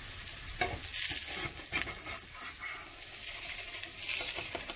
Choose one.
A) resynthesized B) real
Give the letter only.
B